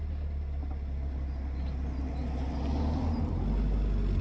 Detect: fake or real real